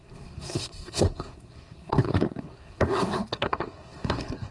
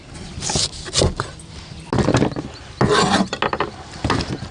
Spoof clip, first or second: first